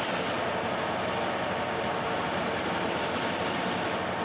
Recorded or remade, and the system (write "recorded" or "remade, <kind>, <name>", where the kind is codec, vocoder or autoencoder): recorded